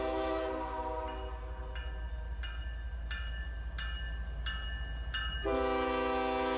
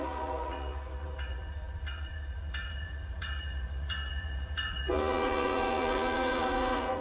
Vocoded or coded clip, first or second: second